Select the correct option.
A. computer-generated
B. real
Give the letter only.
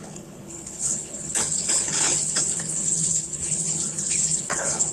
A